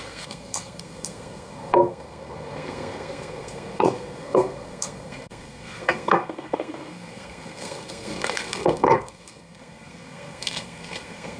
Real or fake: fake